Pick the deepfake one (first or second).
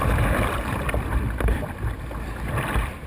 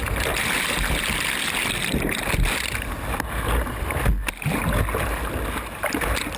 first